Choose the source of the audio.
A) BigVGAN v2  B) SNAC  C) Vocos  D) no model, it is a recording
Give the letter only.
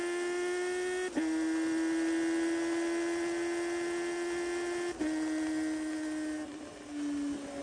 D